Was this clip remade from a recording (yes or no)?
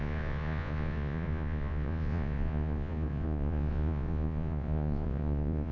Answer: yes